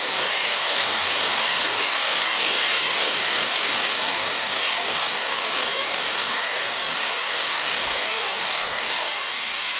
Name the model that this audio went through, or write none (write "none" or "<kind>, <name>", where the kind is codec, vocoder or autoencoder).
codec, DAC